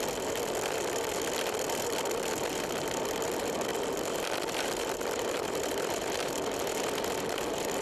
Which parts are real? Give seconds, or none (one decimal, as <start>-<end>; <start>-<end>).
0.0-3.7; 6.1-7.8